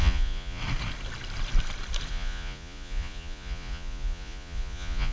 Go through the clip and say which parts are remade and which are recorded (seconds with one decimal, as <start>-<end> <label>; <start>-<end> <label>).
0.0-0.6 remade; 0.6-2.1 recorded; 2.1-5.1 remade